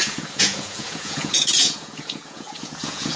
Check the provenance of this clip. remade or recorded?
remade